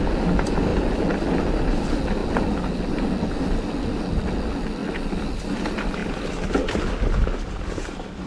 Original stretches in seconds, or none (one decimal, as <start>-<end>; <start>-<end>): 0.0-8.3